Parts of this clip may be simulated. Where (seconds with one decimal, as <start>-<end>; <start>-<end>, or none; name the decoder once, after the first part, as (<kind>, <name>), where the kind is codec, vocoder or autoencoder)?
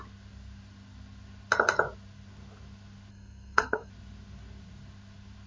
3.1-3.9 (codec, SNAC)